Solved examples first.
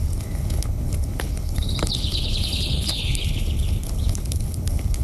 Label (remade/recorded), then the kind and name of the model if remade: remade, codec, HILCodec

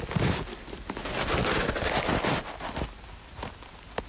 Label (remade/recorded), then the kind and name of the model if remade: recorded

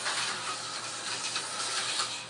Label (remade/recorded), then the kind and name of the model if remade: recorded